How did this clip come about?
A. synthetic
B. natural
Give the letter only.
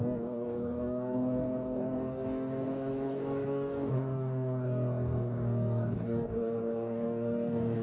A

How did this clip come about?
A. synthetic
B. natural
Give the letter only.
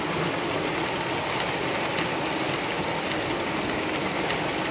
B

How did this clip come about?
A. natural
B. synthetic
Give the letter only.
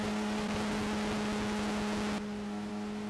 A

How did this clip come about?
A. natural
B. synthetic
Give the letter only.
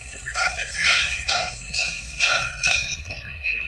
B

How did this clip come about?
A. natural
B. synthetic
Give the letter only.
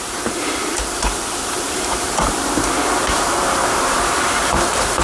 B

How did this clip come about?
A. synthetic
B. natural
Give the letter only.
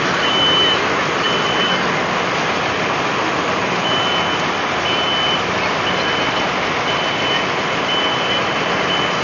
B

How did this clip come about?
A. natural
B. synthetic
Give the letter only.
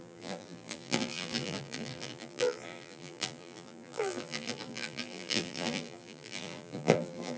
B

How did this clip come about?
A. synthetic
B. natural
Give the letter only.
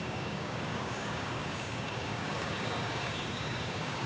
A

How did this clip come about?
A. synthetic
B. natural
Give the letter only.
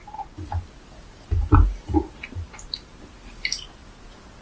B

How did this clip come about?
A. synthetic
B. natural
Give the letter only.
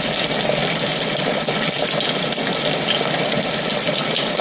B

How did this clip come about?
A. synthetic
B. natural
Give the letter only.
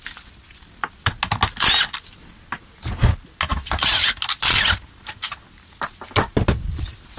B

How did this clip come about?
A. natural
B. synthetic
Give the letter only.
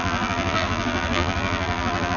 B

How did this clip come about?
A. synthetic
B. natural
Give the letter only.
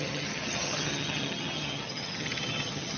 A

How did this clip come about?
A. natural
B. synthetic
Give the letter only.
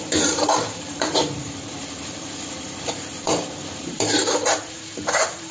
B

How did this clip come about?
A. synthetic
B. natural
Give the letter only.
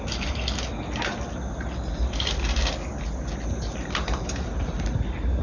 B